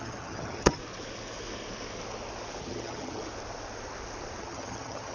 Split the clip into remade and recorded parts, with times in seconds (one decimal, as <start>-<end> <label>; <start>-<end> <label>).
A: 0.0-0.8 remade; 0.8-2.6 recorded; 2.6-3.2 remade; 3.2-4.4 recorded; 4.4-5.1 remade